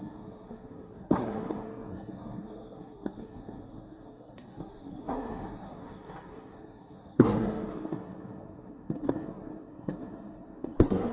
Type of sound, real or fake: fake